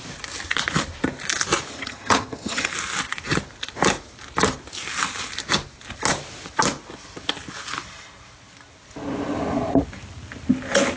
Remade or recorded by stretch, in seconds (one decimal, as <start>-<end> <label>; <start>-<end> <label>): 0.0-1.7 recorded; 1.7-2.7 remade; 2.7-11.0 recorded